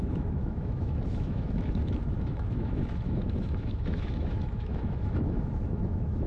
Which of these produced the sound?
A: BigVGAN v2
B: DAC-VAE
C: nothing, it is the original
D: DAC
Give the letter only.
B